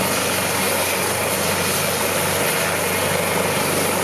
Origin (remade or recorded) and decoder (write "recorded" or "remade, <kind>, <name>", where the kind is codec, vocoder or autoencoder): recorded